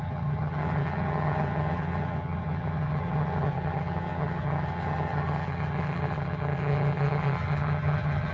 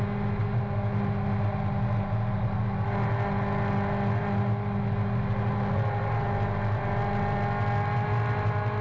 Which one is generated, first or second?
first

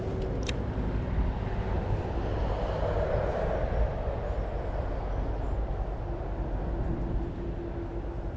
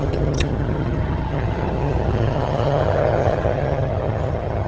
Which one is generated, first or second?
second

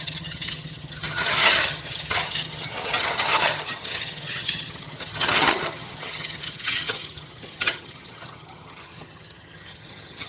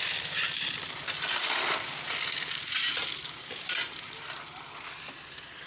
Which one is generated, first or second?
first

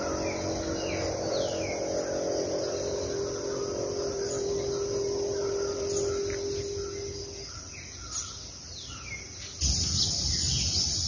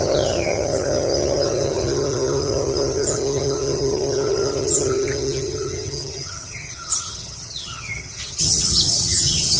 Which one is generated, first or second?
second